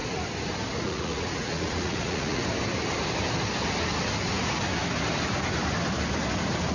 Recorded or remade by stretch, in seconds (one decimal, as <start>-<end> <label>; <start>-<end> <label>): 0.0-0.8 recorded; 0.8-2.4 remade; 2.4-6.7 recorded